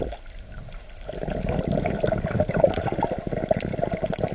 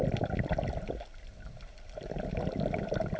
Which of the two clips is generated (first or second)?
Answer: second